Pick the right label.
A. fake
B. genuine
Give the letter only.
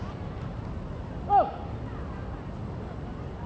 B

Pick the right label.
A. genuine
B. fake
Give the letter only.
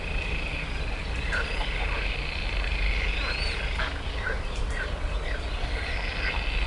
A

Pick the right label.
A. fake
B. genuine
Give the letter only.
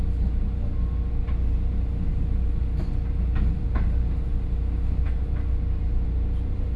B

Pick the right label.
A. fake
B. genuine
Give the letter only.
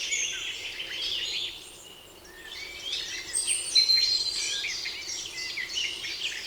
B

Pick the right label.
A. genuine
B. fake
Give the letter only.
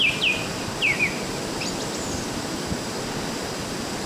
A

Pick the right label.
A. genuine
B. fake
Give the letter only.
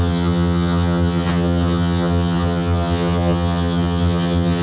B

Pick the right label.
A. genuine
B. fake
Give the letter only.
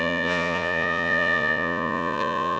B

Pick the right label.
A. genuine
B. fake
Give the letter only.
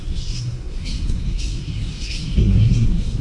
B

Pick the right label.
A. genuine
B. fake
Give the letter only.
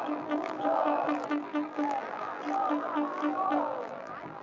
B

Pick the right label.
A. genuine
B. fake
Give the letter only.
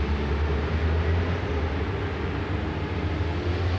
A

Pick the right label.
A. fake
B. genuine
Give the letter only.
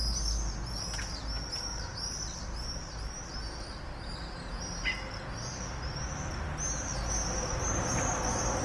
B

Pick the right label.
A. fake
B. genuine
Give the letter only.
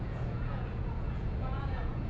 A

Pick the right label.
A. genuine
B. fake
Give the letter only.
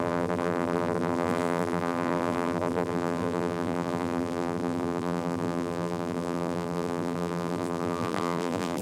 B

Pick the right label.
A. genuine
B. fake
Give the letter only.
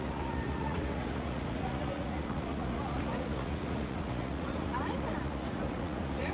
B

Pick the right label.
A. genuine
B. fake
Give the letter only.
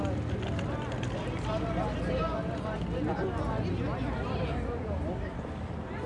A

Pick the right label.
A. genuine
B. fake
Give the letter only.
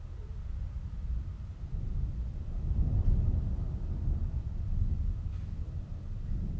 A